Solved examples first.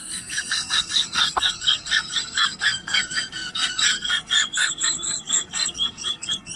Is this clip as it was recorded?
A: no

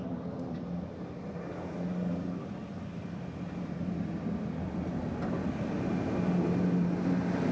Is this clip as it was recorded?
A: yes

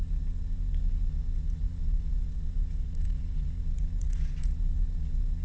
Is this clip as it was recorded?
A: no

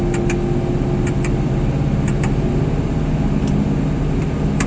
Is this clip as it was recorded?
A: yes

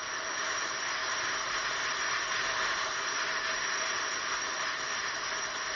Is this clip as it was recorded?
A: yes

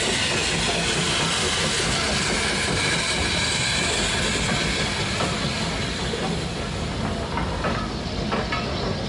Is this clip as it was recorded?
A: yes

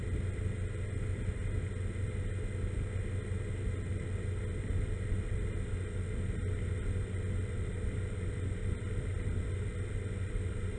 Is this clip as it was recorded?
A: yes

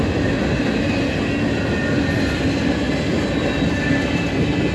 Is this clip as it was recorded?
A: yes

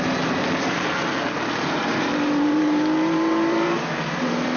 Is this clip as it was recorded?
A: no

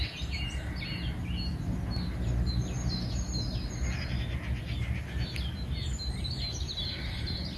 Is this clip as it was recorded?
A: yes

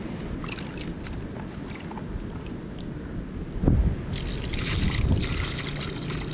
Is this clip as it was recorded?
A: yes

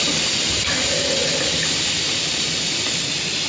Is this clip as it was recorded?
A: yes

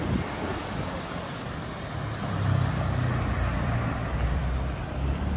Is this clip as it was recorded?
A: yes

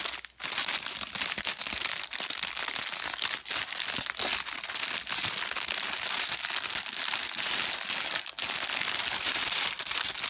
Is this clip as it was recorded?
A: yes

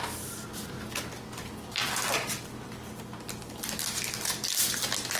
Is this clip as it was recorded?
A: yes